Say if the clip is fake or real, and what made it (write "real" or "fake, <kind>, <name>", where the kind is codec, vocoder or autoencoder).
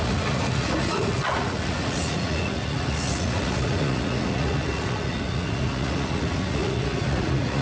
fake, vocoder, Vocos